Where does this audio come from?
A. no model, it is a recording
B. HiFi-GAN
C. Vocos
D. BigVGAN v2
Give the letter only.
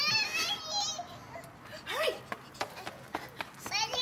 A